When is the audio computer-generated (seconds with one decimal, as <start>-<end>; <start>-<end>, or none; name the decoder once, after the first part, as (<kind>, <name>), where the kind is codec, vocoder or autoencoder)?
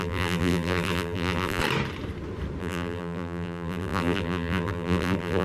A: 0.0-1.6 (vocoder, BigVGAN v2); 2.6-5.4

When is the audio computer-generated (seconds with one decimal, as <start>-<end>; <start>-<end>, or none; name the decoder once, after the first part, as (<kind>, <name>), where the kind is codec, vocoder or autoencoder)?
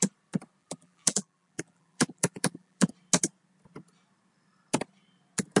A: 0.6-2.9 (vocoder, BigVGAN v2)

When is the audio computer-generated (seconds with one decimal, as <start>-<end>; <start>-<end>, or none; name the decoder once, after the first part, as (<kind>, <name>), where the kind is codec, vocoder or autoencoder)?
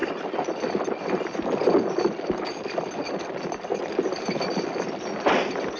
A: none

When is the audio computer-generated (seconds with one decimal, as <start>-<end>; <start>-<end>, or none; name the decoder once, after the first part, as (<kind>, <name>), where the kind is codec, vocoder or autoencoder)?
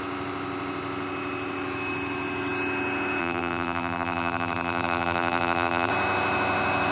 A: 3.2-5.9 (vocoder, BigVGAN v2)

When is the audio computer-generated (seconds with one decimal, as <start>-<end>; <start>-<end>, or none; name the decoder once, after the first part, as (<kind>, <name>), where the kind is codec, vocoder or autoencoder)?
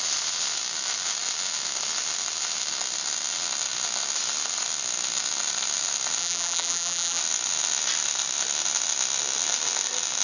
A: 6.2-7.2 (vocoder, BigVGAN v2)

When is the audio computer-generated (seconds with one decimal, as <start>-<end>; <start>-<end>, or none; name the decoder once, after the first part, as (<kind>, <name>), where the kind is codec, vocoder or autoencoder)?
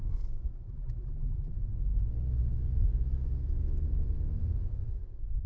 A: 0.7-1.5 (vocoder, BigVGAN v2)